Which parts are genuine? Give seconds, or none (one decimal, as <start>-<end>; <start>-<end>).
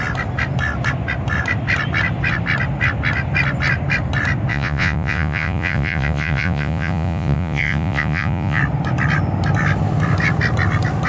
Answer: 0.0-4.5; 8.6-11.1